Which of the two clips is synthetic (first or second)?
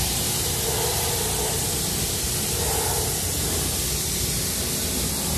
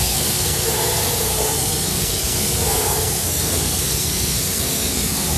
second